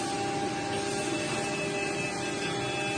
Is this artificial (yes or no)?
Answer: no